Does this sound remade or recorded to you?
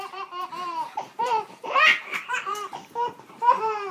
remade